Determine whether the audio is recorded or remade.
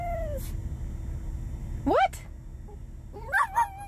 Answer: recorded